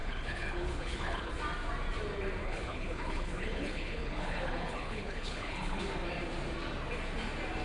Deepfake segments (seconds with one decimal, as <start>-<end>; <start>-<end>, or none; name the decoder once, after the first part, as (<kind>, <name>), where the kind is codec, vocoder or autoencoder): 0.0-1.3 (codec, HILCodec); 2.4-5.8